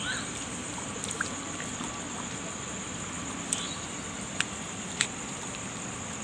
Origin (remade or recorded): recorded